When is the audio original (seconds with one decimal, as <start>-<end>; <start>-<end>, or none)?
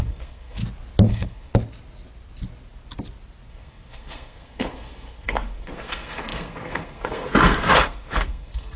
0.6-1.1; 1.5-3.5